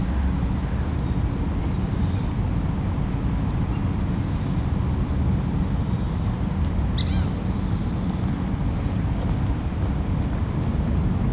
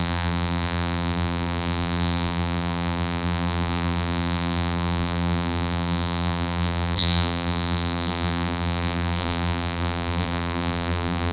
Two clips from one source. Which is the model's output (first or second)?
second